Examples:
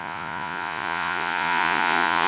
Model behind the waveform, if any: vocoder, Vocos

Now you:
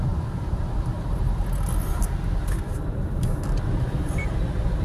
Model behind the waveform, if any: none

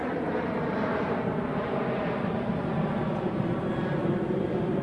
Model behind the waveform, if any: vocoder, BigVGAN v2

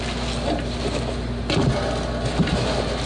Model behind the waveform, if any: none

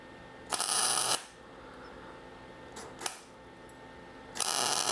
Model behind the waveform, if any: none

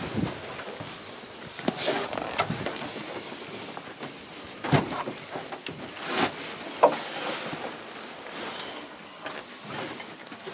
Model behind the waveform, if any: none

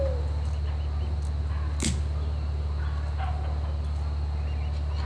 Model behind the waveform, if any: none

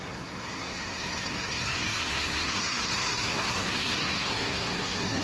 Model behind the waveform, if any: codec, SNAC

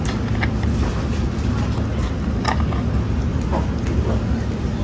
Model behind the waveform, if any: none